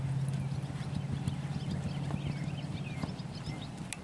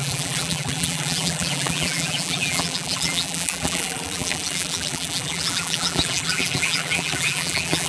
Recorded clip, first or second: first